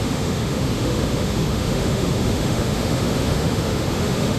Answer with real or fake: fake